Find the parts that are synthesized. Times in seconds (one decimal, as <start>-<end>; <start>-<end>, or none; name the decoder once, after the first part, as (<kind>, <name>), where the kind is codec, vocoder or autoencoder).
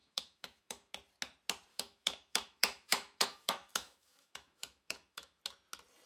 0.0-0.9 (autoencoder, DAC-VAE); 1.7-5.4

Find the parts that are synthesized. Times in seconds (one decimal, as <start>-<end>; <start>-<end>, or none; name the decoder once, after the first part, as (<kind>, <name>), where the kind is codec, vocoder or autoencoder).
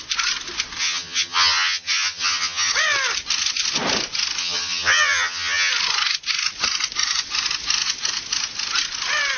0.8-2.7 (vocoder, HiFi-GAN); 4.4-5.7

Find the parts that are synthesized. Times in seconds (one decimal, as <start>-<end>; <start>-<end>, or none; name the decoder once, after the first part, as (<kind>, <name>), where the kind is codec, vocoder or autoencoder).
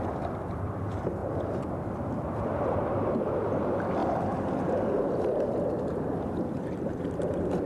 0.0-7.7 (vocoder, BigVGAN v2)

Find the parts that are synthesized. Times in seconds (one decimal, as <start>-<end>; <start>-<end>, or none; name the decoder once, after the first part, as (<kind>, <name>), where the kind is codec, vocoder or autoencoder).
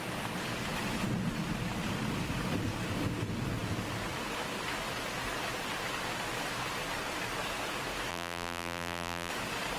8.1-9.3 (vocoder, BigVGAN v2)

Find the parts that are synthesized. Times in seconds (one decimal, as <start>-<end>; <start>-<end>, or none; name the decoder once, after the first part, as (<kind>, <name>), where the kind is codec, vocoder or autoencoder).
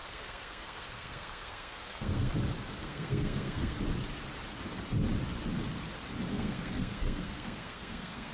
0.0-2.3 (codec, SNAC); 2.8-3.8; 6.3-8.3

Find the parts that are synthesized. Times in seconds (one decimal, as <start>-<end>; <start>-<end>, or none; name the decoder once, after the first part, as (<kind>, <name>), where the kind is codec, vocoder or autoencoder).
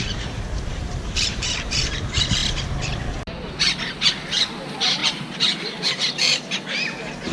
0.0-2.4 (vocoder, BigVGAN v2); 4.4-7.3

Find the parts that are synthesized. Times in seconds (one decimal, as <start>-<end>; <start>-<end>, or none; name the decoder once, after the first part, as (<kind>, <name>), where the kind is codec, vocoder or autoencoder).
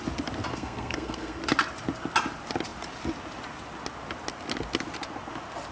0.5-1.4 (codec, SNAC)